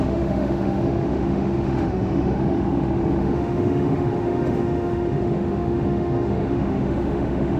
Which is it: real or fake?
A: fake